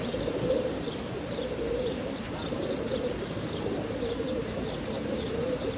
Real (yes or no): no